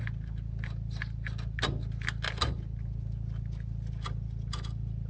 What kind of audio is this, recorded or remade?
recorded